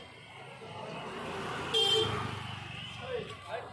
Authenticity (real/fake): real